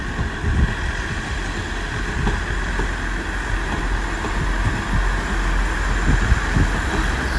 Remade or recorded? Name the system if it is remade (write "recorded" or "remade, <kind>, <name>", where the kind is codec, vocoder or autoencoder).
recorded